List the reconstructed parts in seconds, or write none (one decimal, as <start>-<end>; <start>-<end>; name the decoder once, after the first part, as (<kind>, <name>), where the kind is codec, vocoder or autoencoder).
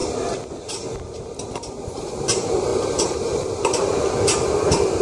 1.0-5.0 (vocoder, BigVGAN v2)